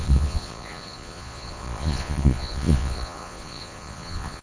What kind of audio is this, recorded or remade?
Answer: remade